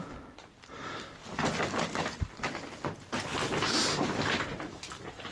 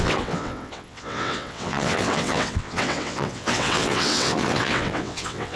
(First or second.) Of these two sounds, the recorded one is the first